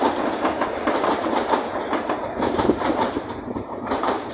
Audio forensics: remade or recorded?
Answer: remade